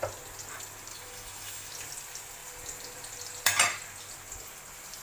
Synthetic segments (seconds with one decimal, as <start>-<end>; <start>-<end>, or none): 0.9-1.7